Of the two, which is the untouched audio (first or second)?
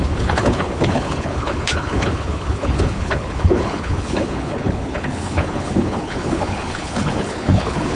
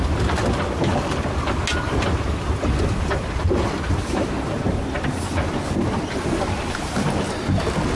second